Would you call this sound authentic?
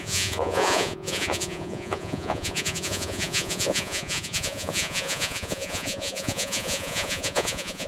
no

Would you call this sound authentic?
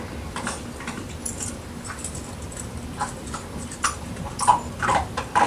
yes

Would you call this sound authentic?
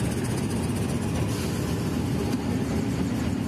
yes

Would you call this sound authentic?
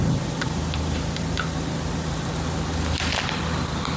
yes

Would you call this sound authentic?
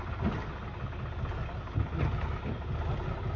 yes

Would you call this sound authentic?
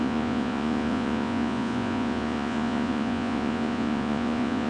no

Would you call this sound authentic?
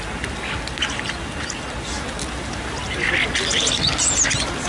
yes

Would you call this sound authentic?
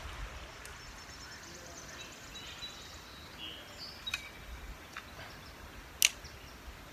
yes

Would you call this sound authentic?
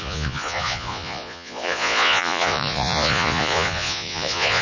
no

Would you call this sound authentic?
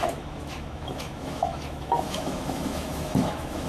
no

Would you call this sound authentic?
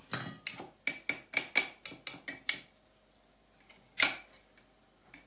yes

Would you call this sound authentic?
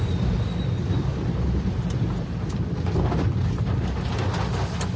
yes